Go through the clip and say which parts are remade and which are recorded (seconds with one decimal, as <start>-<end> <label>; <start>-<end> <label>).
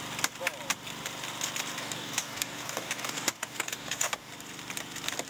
0.0-1.8 recorded; 1.8-4.3 remade; 4.3-5.3 recorded